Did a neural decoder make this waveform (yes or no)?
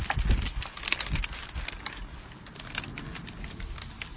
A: no